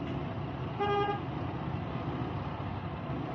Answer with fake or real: real